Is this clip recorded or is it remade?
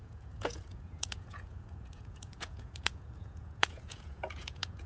remade